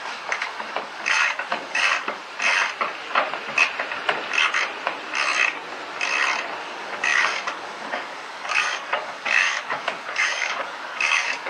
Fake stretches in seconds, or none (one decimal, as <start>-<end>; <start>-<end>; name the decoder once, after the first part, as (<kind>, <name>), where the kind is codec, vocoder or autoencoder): 0.0-2.2 (codec, DAC); 6.6-11.5